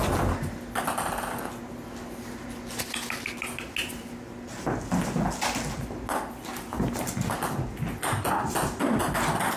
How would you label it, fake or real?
real